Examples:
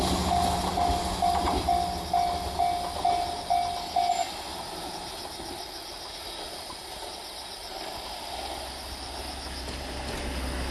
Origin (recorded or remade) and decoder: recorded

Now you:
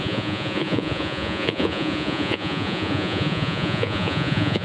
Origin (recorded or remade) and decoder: remade, vocoder, Vocos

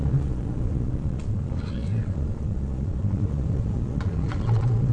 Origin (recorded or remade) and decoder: remade, vocoder, Vocos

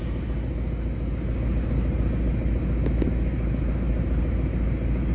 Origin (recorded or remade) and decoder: recorded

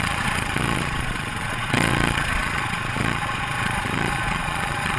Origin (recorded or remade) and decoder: remade, vocoder, Vocos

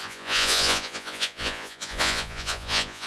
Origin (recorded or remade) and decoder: remade, vocoder, Vocos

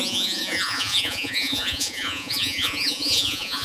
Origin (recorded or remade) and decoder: remade, vocoder, Vocos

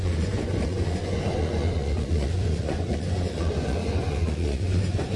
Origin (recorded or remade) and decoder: remade, vocoder, Vocos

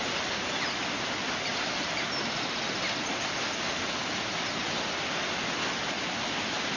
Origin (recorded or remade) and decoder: recorded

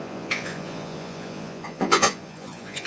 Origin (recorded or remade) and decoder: remade, vocoder, Vocos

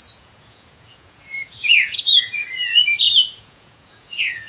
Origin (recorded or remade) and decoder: remade, vocoder, Vocos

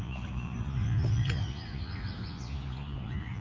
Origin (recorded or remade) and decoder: remade, vocoder, Vocos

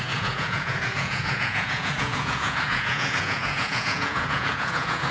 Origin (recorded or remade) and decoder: remade, vocoder, Vocos